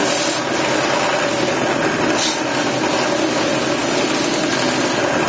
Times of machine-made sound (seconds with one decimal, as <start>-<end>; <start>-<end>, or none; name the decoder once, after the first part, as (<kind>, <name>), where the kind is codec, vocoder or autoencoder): none